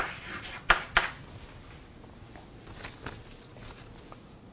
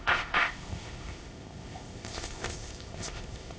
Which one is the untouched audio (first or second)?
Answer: first